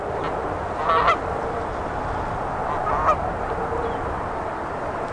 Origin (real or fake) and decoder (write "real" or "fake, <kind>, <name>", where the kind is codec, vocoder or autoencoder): real